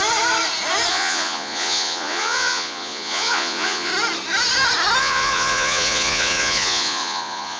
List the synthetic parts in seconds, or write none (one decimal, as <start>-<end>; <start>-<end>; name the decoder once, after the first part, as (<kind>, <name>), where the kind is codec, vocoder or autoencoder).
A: 0.9-3.9 (vocoder, Vocos); 5.0-7.6